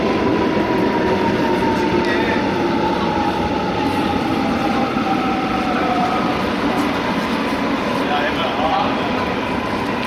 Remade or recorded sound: recorded